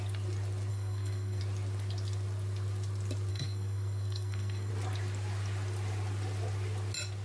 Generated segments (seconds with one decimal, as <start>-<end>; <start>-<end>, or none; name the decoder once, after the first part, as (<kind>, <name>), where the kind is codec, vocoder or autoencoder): 0.7-1.4 (codec, SNAC); 3.3-4.7